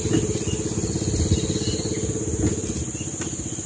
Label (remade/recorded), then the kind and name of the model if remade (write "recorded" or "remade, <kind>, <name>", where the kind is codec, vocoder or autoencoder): recorded